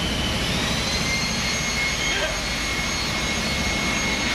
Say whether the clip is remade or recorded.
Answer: recorded